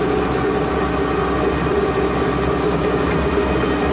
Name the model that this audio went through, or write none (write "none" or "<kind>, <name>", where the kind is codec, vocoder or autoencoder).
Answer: none